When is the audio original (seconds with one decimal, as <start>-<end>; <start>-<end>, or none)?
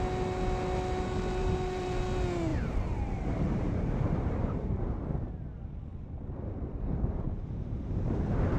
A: 0.0-1.4; 2.0-2.5; 4.7-8.6